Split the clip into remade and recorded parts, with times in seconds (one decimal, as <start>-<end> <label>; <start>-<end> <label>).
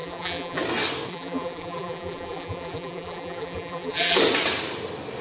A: 0.0-0.6 remade; 0.6-1.1 recorded; 1.1-4.2 remade; 4.2-5.2 recorded